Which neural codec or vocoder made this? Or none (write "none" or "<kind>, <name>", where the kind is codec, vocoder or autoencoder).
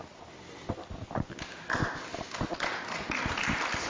none